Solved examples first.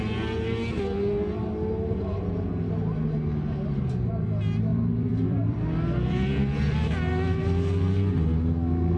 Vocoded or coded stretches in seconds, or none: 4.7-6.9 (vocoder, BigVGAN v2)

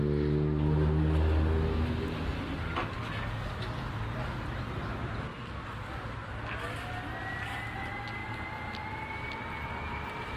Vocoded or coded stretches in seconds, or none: none

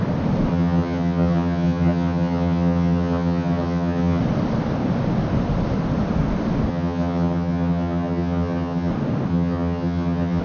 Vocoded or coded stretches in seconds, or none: 0.5-4.2 (vocoder, HiFi-GAN); 6.7-8.9; 9.3-10.4

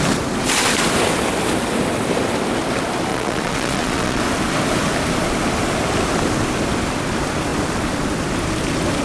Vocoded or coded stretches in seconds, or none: 3.1-4.2 (vocoder, Vocos)

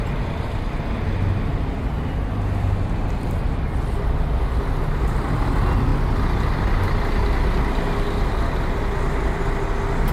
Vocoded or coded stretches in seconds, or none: none